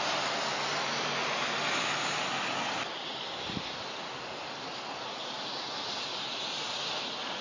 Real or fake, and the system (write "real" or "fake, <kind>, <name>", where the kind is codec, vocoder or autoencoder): real